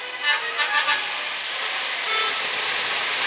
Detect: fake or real real